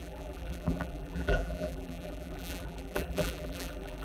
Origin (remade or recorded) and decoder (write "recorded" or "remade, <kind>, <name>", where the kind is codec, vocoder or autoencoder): remade, vocoder, BigVGAN v2